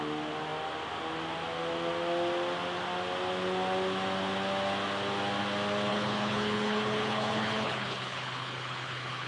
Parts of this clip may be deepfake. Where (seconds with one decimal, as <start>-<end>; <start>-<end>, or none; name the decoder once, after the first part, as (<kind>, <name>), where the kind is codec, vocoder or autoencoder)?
5.9-9.3 (codec, HILCodec)